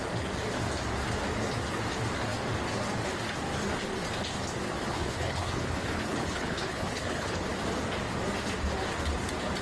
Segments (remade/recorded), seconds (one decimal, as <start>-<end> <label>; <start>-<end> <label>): 0.0-4.9 recorded; 4.9-7.5 remade; 7.5-9.6 recorded